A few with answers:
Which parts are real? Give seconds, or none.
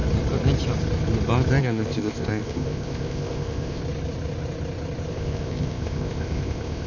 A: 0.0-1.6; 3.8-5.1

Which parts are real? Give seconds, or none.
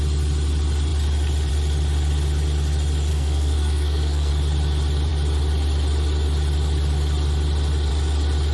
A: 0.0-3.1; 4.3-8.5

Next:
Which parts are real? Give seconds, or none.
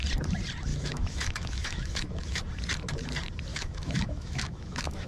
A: 0.0-0.7; 2.4-3.5